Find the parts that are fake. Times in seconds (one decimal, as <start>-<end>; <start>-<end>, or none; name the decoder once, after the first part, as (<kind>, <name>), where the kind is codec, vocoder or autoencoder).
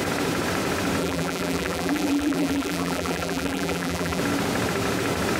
1.0-4.2 (vocoder, BigVGAN v2)